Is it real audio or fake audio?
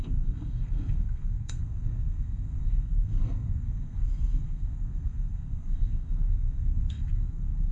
fake